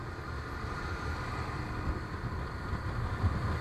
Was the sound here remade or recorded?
recorded